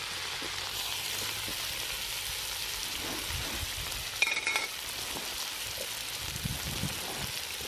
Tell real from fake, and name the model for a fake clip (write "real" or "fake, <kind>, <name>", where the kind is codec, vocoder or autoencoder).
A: real